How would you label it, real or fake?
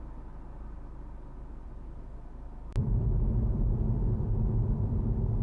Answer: real